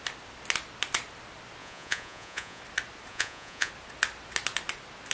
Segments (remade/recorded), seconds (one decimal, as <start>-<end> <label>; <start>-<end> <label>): 0.0-1.6 recorded; 1.6-2.6 remade; 2.6-3.1 recorded; 3.1-3.7 remade; 3.7-5.1 recorded